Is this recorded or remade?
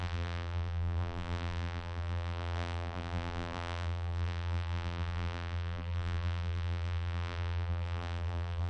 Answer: remade